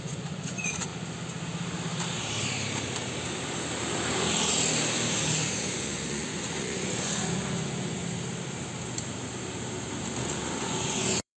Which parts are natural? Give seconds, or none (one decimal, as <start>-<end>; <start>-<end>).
0.9-5.5; 8.0-10.2